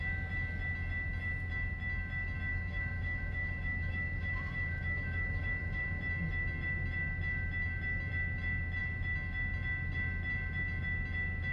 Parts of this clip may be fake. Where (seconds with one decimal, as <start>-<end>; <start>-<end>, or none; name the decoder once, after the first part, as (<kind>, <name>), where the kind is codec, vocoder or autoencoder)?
2.5-6.0 (autoencoder, DAC-VAE)